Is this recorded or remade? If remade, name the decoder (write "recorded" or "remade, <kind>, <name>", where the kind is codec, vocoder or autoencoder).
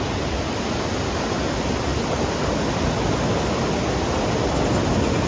recorded